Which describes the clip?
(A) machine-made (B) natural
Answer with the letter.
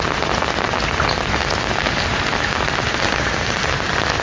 B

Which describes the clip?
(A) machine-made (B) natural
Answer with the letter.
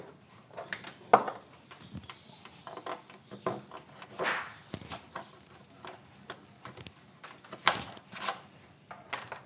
B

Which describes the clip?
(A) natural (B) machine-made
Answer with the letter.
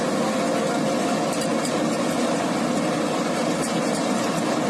A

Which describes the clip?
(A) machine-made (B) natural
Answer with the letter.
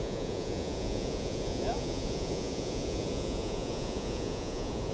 A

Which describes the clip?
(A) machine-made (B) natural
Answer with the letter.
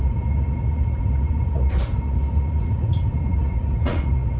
A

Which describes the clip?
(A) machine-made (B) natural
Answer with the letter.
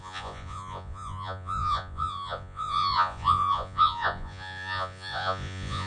A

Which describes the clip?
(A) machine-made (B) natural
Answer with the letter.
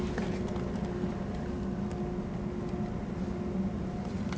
B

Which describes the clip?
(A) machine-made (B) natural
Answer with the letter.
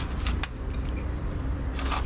B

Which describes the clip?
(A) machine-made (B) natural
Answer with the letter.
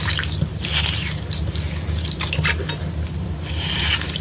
B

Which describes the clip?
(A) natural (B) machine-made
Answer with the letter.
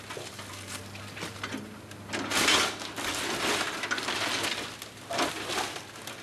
A